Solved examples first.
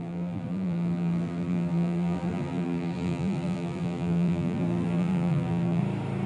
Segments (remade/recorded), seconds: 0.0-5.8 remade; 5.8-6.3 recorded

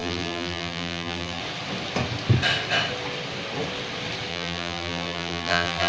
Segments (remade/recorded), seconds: 0.0-1.4 remade; 1.4-4.3 recorded; 4.3-5.9 remade